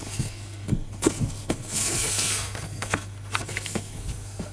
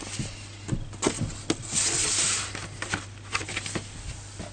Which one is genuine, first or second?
second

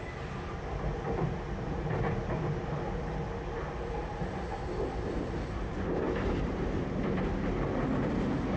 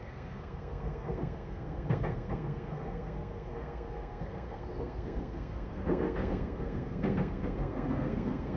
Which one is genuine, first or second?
first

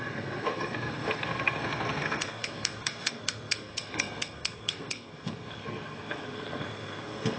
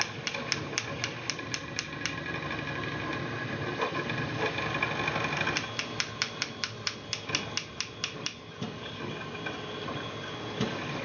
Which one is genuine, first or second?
second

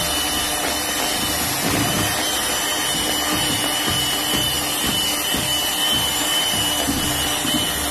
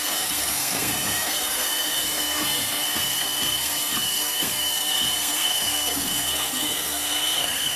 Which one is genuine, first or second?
first